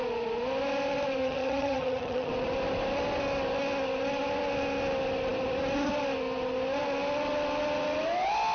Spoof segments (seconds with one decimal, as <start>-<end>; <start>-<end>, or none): 1.2-2.3